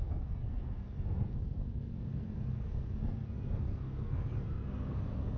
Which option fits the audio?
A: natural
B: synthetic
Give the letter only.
B